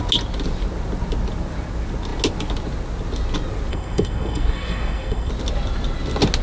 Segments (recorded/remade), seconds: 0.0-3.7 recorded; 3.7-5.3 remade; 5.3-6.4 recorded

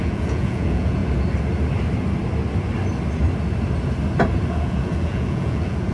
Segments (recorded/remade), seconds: 0.0-1.0 remade; 1.0-4.5 recorded; 4.5-5.9 remade

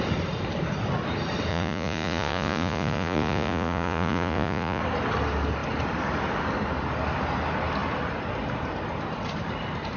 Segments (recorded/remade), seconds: 0.0-1.5 recorded; 1.5-4.8 remade; 4.8-10.0 recorded

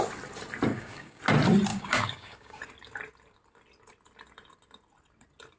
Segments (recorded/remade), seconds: 0.0-0.7 recorded; 0.7-1.2 remade; 1.2-1.7 recorded; 1.7-2.6 remade; 2.6-5.6 recorded

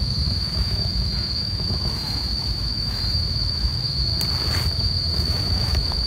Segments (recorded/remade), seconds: 0.0-4.1 remade; 4.1-4.8 recorded; 4.8-6.1 remade

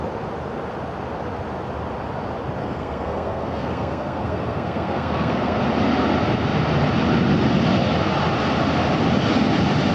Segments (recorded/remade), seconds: 0.0-2.6 recorded; 2.6-5.6 remade; 5.6-9.9 recorded

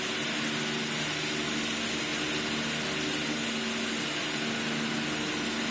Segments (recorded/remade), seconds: 0.0-5.7 recorded